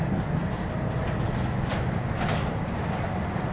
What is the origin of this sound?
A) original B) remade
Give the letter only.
A